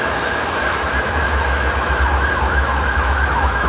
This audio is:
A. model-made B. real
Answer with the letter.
A